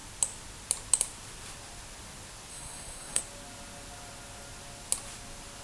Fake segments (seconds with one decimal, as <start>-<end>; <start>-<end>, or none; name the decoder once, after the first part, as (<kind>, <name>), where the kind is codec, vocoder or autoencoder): 2.5-3.2 (codec, SNAC)